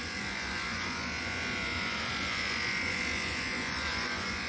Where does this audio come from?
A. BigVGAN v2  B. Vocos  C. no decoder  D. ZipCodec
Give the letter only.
B